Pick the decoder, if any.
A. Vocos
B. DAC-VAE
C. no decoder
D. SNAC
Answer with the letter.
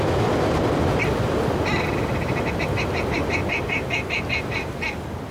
C